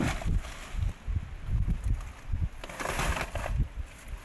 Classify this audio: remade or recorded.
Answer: recorded